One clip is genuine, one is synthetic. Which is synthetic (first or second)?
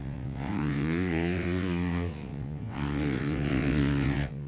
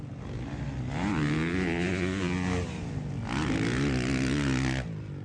first